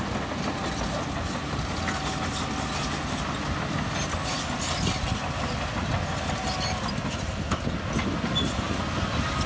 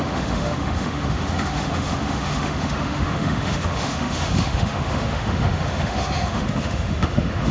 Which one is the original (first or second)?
first